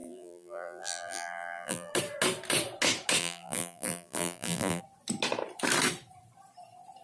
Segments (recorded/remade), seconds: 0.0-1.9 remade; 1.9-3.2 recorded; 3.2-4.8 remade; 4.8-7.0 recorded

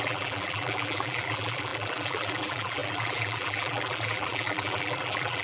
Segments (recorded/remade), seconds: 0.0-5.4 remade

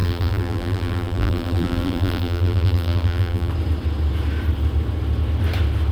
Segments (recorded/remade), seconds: 0.0-3.5 remade; 3.5-5.9 recorded

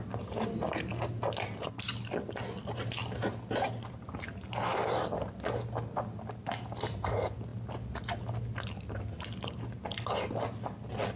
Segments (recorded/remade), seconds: 0.0-3.0 recorded; 3.0-3.9 remade; 3.9-7.5 recorded; 7.5-8.2 remade; 8.2-11.2 recorded

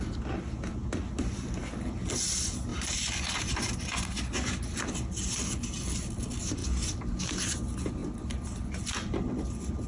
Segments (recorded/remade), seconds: 0.0-2.7 recorded; 2.7-4.0 remade; 4.0-9.9 recorded

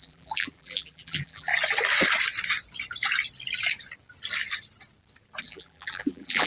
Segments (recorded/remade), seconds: 0.0-1.5 remade; 1.5-5.4 recorded; 5.4-6.5 remade